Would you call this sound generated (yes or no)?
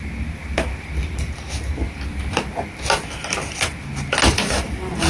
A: no